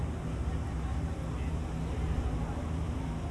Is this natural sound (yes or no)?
yes